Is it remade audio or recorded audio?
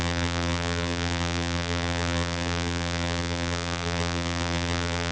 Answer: remade